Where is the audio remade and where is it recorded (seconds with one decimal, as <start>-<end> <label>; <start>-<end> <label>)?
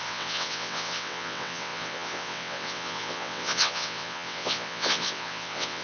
0.0-5.8 remade